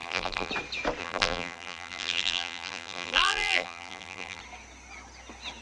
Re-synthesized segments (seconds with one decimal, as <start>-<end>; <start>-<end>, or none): 0.0-0.5; 1.0-4.4